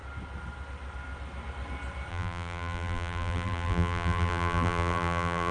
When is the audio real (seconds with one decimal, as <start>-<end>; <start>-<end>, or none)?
0.0-2.1